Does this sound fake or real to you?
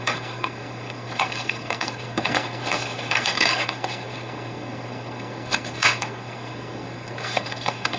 fake